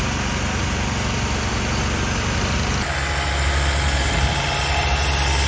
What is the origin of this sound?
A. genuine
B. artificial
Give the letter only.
A